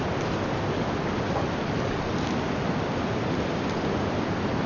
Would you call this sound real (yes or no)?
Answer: yes